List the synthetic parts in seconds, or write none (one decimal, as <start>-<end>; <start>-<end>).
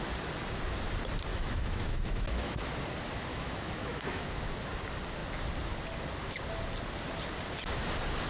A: 1.3-2.8; 3.3-4.4